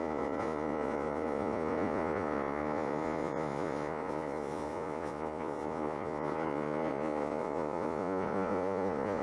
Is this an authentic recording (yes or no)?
no